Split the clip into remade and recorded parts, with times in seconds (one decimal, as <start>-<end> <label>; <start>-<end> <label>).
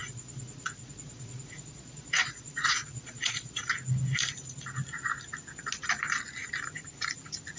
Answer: 0.0-3.6 remade; 3.6-7.6 recorded